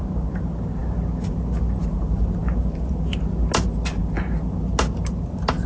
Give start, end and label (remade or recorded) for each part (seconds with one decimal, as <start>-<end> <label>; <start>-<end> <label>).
0.0-5.7 recorded